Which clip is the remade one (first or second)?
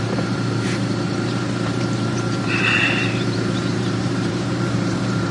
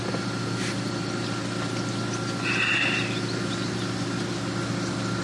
first